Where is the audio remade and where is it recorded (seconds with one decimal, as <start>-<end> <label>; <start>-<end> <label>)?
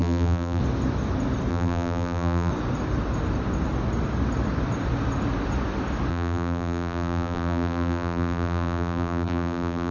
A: 0.0-0.6 remade; 0.6-1.5 recorded; 1.5-2.5 remade; 2.5-6.1 recorded; 6.1-9.9 remade